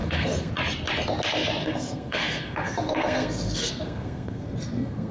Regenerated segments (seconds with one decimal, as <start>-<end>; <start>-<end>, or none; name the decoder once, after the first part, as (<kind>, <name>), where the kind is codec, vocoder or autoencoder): 0.0-0.5 (codec, SNAC); 1.6-5.1